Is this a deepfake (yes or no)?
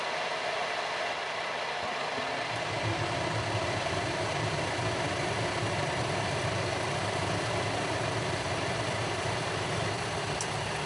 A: yes